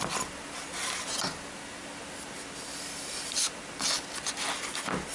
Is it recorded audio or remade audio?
recorded